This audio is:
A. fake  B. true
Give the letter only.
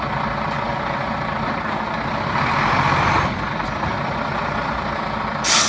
B